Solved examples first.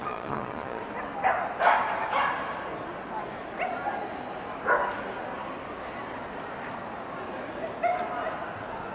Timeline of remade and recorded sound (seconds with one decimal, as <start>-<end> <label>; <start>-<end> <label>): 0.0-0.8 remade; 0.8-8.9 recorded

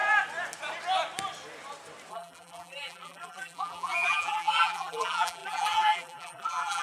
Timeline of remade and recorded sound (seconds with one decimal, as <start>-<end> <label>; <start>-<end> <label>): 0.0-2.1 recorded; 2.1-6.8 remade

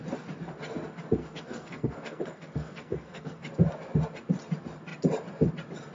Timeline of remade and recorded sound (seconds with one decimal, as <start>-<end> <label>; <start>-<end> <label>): 0.0-1.2 recorded; 1.2-3.4 remade; 3.4-5.9 recorded

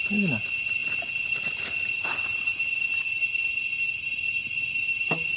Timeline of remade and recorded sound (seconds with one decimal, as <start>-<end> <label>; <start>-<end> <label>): 0.0-5.4 recorded

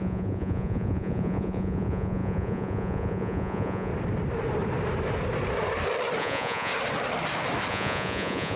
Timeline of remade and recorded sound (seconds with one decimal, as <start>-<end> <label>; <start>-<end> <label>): 0.0-3.9 remade; 3.9-6.2 recorded; 6.2-6.7 remade; 6.7-7.7 recorded; 7.7-8.6 remade